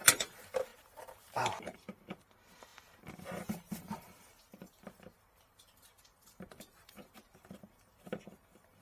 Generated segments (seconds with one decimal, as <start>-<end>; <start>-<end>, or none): 0.0-8.8